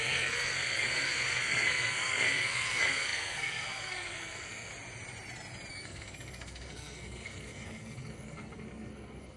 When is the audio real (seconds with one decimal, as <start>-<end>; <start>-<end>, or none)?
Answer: 4.7-5.7